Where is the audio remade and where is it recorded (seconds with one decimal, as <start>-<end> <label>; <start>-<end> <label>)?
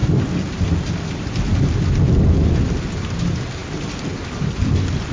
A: 0.0-5.1 recorded